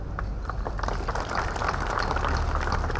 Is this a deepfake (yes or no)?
no